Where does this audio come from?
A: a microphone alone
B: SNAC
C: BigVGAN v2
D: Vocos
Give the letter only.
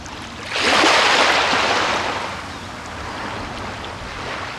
A